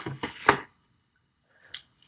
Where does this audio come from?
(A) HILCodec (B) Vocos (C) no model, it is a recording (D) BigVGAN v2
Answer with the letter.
A